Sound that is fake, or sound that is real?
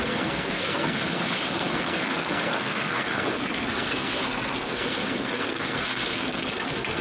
fake